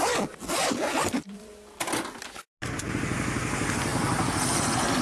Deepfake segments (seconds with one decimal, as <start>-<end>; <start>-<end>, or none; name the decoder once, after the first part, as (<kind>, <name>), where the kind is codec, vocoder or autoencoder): 0.6-1.5 (vocoder, BigVGAN v2)